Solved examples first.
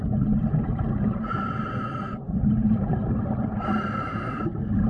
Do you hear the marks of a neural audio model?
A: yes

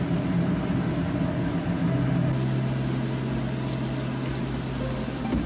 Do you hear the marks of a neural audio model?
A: no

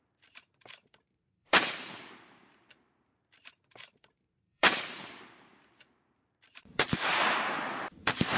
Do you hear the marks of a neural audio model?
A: yes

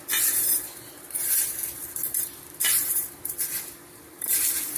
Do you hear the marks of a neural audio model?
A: yes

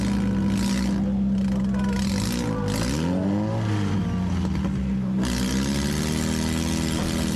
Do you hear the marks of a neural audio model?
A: no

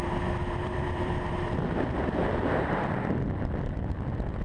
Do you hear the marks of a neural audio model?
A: yes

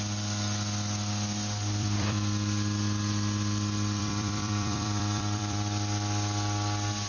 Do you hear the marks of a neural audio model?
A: yes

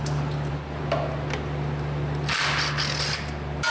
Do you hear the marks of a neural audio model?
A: no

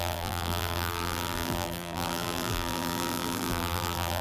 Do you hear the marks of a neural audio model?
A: yes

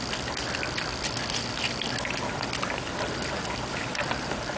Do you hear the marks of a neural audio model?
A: no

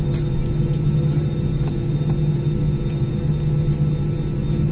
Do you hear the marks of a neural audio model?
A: no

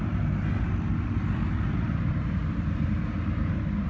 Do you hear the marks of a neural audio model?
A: yes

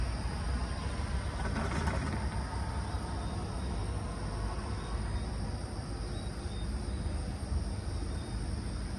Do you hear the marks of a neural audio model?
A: no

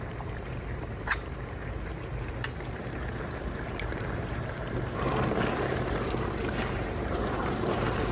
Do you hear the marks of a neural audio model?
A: yes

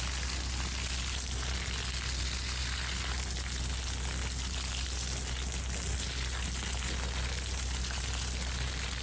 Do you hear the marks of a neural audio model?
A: no